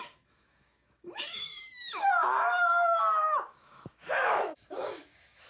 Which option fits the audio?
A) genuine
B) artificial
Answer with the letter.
B